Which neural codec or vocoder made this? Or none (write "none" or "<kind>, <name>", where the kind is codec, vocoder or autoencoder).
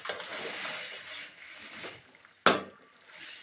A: none